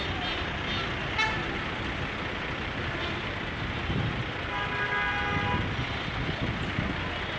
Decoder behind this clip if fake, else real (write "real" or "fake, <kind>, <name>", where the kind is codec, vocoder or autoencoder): real